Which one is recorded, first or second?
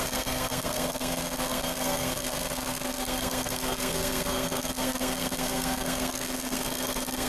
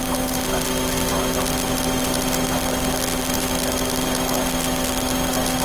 second